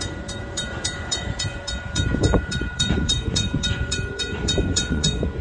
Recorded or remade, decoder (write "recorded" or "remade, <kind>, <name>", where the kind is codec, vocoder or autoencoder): remade, vocoder, Vocos